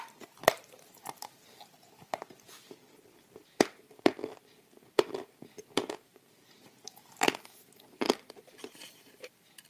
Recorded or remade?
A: recorded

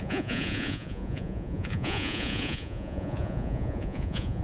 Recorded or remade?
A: remade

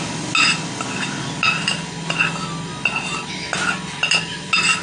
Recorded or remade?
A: recorded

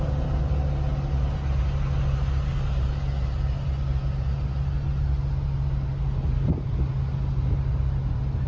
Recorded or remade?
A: recorded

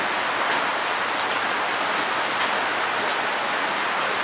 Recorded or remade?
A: recorded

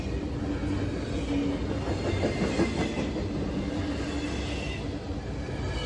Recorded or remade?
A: recorded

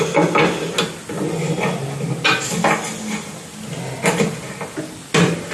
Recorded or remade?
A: recorded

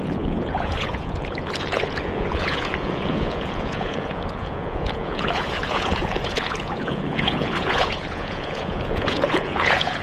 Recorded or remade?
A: remade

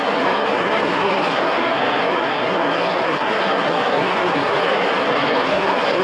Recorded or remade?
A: remade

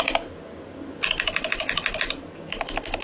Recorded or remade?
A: recorded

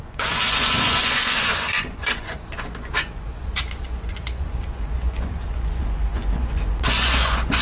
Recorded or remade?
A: remade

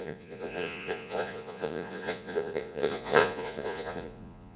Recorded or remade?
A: remade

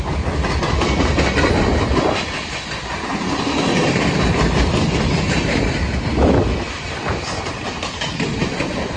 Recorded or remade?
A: recorded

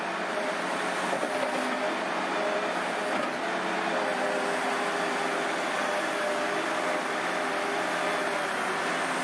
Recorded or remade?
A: recorded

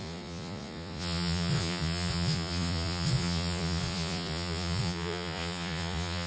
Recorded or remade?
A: remade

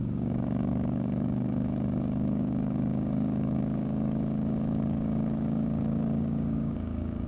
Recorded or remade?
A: remade